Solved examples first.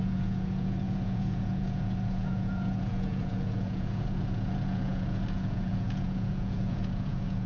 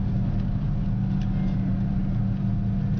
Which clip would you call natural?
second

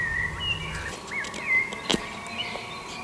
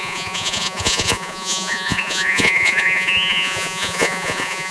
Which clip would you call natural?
first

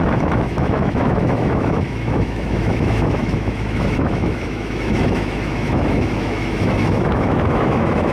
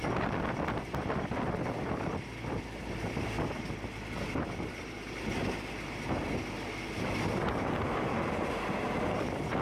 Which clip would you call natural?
second